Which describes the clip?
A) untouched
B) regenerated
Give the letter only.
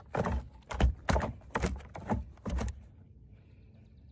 A